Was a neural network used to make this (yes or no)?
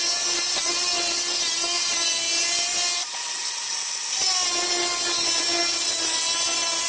no